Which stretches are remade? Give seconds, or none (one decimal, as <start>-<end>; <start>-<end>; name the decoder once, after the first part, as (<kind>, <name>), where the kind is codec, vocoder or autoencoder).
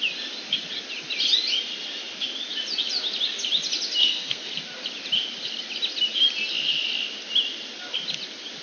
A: 4.0-4.5 (codec, SNAC)